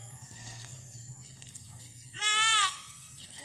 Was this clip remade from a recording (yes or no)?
yes